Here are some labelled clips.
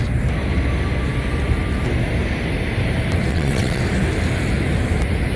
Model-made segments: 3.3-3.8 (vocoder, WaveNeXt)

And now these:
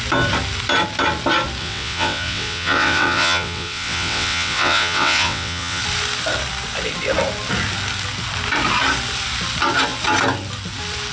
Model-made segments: 1.6-5.8 (vocoder, WaveNeXt)